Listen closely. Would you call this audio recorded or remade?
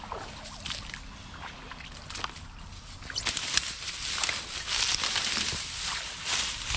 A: recorded